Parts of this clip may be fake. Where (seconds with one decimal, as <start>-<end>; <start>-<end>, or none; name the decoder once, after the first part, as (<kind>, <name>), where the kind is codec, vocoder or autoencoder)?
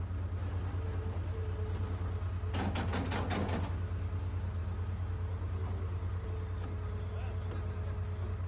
none